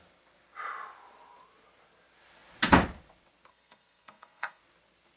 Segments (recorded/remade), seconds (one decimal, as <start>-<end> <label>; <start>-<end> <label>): 0.0-3.5 recorded; 3.5-4.6 remade; 4.6-5.2 recorded